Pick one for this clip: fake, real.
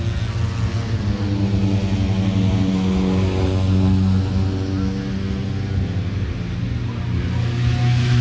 real